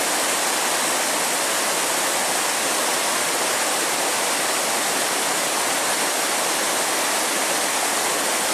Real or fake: real